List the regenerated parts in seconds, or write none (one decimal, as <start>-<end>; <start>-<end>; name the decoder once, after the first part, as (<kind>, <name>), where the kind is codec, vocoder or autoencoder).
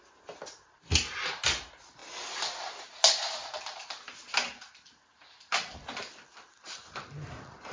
none